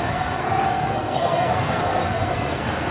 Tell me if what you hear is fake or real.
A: fake